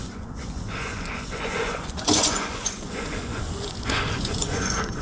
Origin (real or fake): fake